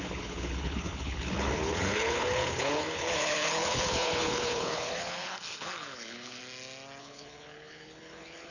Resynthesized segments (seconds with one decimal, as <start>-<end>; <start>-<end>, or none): 0.0-6.4; 7.0-8.5